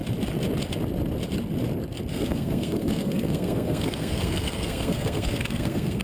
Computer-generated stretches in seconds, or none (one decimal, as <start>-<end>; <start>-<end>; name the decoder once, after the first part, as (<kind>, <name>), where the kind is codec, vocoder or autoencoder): 2.1-6.0 (codec, SNAC)